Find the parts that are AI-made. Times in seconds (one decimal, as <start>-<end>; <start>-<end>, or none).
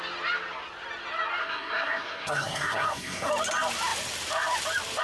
1.4-3.3